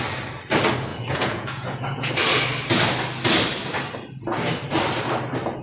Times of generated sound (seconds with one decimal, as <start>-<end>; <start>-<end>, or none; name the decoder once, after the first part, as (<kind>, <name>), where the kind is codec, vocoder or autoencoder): 0.9-2.1 (vocoder, Vocos)